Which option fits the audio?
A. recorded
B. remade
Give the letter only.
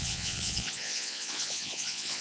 B